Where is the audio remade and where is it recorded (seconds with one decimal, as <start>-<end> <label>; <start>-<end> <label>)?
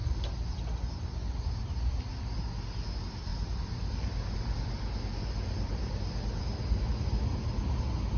0.0-3.3 recorded; 3.3-6.6 remade; 6.6-8.2 recorded